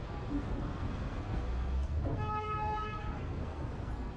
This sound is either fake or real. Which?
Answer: fake